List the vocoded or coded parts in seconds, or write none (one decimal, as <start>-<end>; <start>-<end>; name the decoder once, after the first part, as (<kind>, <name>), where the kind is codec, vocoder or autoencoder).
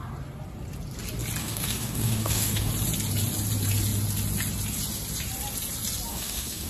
1.4-2.7 (codec, DAC); 6.1-6.7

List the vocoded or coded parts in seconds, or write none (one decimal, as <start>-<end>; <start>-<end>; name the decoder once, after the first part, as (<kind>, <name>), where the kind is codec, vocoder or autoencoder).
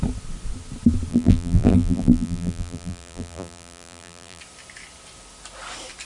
1.1-4.4 (vocoder, BigVGAN v2)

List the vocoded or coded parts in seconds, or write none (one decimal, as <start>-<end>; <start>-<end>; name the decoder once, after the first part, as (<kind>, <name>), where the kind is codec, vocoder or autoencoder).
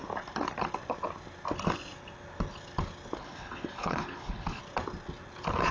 3.2-4.6 (codec, HILCodec)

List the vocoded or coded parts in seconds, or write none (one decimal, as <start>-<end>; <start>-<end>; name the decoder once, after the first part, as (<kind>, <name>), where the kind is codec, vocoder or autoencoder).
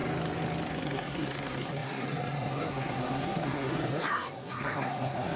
0.7-5.4 (codec, SNAC)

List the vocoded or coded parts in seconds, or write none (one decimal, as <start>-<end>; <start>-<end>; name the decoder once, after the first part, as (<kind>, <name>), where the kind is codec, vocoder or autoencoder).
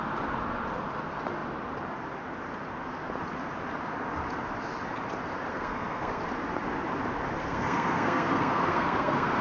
5.5-6.2 (codec, SNAC); 7.4-9.4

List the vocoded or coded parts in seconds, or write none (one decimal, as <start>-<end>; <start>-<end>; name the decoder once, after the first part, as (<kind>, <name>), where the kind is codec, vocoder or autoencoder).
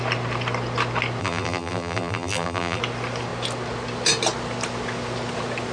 1.2-2.8 (vocoder, BigVGAN v2)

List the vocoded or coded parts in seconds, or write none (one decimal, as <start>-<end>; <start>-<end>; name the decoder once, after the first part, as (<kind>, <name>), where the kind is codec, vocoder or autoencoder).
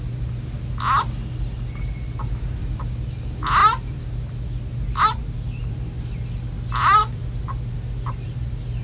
2.6-3.2 (vocoder, BigVGAN v2)